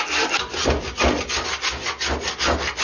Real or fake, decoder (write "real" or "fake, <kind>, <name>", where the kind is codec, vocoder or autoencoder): real